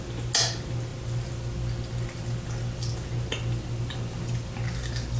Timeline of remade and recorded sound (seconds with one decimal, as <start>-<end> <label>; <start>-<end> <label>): 0.0-5.2 recorded